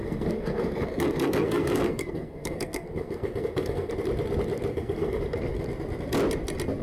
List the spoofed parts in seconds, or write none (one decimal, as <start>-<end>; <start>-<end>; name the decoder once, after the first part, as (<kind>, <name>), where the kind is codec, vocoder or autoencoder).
0.0-3.9 (codec, SNAC); 4.7-5.2